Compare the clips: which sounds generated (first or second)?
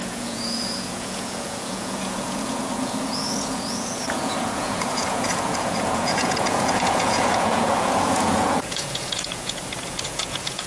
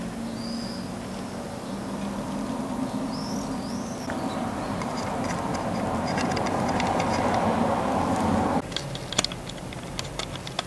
first